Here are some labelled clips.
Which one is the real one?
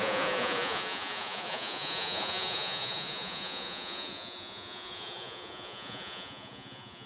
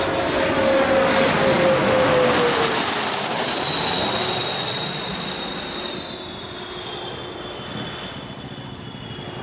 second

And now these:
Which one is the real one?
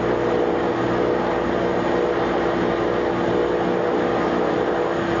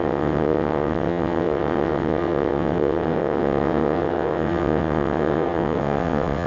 first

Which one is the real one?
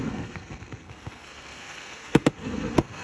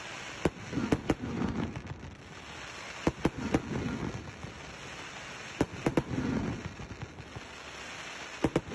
second